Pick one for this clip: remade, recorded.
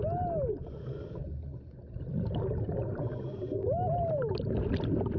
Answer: recorded